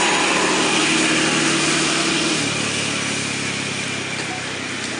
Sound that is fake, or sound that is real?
real